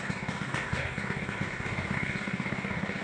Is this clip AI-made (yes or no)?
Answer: yes